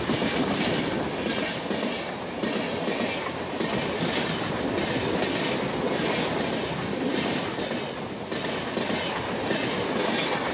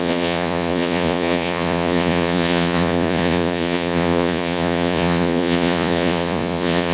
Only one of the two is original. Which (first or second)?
first